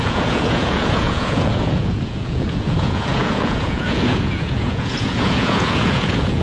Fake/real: fake